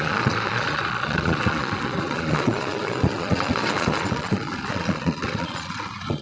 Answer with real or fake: fake